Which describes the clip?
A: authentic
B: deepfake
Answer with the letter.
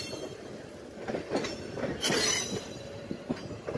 A